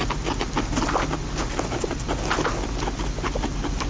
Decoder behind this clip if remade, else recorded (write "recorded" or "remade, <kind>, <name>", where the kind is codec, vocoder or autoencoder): recorded